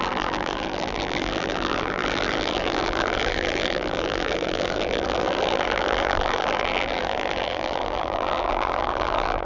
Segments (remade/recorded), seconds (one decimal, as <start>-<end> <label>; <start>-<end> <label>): 0.0-9.4 remade